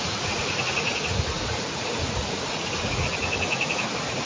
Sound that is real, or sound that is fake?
fake